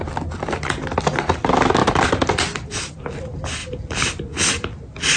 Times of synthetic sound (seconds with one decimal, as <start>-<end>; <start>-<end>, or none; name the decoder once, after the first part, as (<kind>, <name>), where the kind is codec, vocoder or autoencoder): 1.8-3.1 (vocoder, BigVGAN v2)

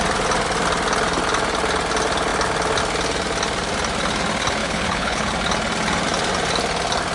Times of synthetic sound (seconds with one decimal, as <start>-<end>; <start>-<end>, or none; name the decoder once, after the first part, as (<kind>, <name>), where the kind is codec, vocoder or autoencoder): 4.6-5.3 (codec, HILCodec)

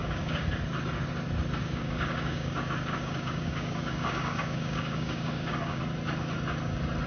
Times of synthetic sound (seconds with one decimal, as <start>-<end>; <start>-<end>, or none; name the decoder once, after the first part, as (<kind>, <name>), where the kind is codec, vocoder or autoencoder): 0.0-0.5 (codec, DAC); 1.6-5.8

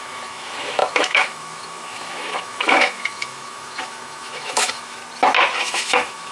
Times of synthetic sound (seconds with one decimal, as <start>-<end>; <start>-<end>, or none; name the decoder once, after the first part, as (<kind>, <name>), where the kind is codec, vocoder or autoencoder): 0.0-5.0 (autoencoder, DAC-VAE); 5.6-6.3